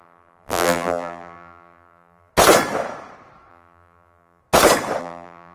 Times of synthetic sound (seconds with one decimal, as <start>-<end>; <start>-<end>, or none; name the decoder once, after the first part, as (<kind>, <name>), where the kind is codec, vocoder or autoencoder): 0.0-2.3 (vocoder, BigVGAN v2); 3.5-4.4; 5.0-5.5